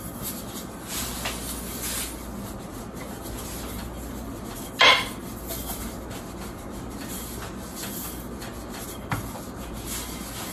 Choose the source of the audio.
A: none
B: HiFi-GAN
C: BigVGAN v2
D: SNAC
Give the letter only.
A